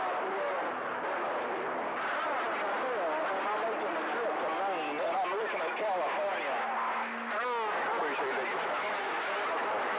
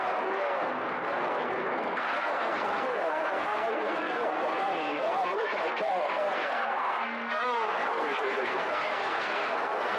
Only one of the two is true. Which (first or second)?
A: first